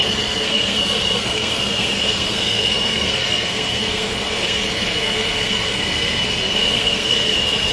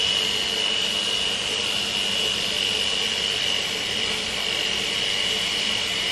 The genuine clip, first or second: second